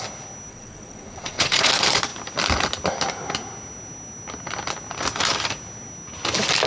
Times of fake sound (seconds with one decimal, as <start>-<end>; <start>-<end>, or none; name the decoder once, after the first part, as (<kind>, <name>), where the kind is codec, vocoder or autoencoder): 0.5-1.7 (vocoder, Vocos)